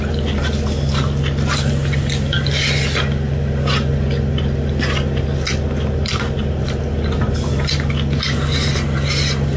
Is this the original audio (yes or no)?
no